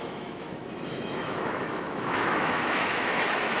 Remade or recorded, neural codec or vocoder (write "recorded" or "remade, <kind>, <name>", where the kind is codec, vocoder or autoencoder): remade, autoencoder, DAC-VAE